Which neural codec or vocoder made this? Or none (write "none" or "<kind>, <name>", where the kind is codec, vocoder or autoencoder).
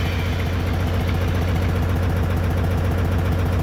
none